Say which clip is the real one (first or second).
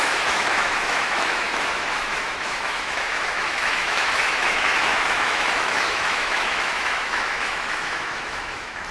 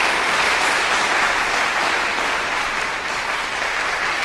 second